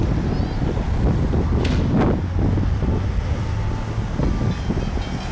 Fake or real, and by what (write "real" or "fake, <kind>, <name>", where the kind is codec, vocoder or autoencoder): real